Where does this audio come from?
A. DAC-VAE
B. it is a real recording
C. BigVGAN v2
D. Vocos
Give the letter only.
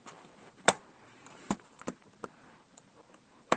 C